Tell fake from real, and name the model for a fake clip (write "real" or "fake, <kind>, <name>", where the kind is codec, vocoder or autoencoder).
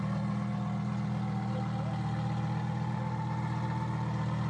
real